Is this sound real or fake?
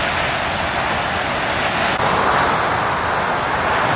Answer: real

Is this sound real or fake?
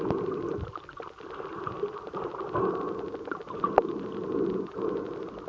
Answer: real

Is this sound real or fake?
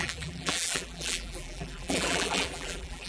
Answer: fake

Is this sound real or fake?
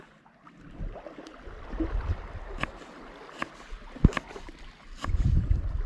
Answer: real